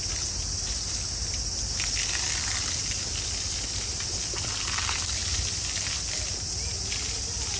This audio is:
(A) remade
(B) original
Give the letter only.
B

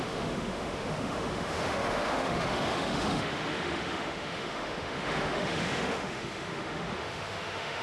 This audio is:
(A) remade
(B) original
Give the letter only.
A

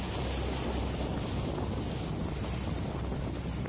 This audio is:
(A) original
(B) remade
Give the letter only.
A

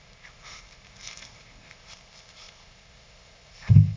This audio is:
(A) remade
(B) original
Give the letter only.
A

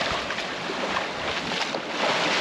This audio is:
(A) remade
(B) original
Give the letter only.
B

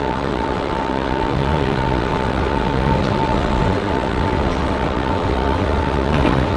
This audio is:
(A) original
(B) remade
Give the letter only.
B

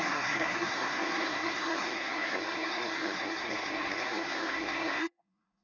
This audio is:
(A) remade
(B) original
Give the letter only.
A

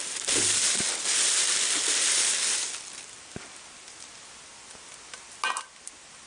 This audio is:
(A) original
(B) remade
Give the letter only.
A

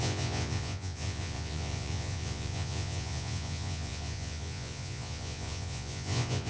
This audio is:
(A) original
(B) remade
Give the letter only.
B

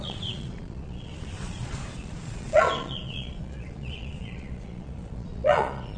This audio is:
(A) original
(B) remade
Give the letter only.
B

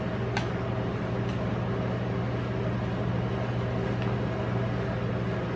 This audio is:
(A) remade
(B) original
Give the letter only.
B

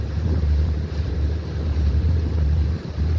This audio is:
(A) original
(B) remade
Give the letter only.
B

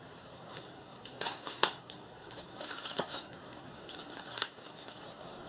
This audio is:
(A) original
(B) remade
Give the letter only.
B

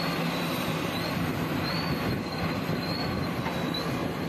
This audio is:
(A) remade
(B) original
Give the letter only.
B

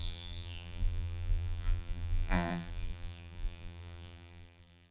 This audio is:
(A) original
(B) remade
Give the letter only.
B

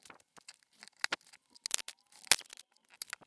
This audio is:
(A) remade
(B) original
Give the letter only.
B